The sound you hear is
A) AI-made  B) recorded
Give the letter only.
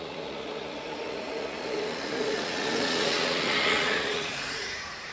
A